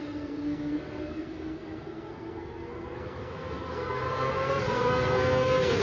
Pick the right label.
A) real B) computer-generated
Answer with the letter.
B